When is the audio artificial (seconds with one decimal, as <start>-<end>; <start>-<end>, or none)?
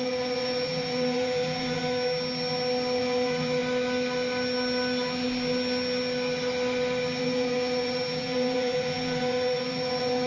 0.0-1.8; 3.0-3.6; 7.2-10.3